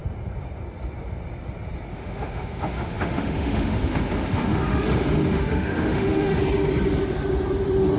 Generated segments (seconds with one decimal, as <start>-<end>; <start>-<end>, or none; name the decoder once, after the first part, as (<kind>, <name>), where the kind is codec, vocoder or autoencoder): 1.9-6.4 (autoencoder, DAC-VAE)